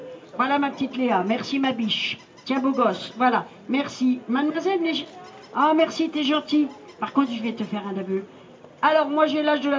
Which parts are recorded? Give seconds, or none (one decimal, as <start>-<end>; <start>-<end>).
0.0-9.8